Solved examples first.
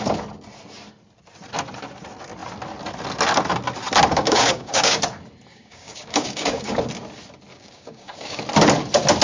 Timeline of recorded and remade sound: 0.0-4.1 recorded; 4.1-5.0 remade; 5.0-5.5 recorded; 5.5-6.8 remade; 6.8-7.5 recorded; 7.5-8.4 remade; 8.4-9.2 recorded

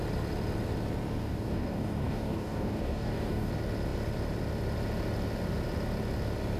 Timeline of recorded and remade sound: 0.0-1.2 recorded; 1.2-3.5 remade; 3.5-6.6 recorded

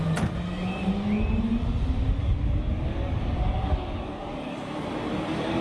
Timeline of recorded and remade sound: 0.0-2.2 recorded; 2.2-5.6 remade